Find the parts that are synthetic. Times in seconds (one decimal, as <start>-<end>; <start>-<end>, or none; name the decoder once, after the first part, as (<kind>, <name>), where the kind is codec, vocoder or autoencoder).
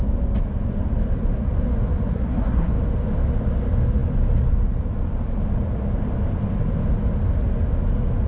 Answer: 2.1-2.7 (codec, SNAC)